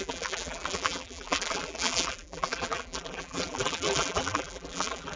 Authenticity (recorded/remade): remade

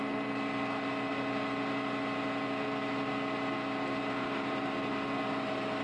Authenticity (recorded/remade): recorded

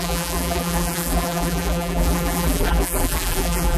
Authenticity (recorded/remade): remade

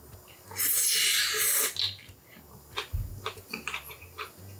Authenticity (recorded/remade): recorded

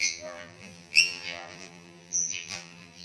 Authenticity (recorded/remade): remade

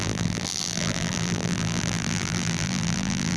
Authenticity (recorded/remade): remade